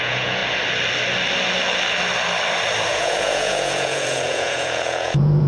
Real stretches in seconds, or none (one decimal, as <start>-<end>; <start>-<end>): 0.4-2.9